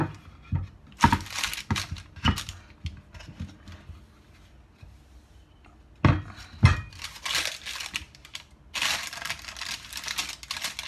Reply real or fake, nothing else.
real